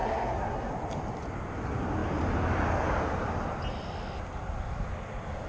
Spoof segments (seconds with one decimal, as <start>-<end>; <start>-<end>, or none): 0.0-0.7